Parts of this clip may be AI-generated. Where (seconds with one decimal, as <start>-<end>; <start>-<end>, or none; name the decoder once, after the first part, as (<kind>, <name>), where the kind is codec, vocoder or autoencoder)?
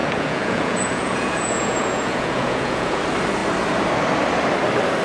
0.0-3.0 (vocoder, Vocos)